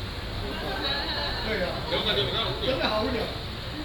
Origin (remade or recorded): recorded